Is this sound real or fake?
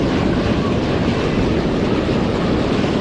real